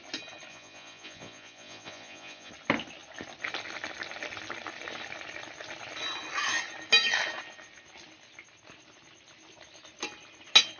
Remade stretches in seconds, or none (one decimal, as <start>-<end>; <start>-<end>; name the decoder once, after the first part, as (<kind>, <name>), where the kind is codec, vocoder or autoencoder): 0.5-2.5 (vocoder, Vocos)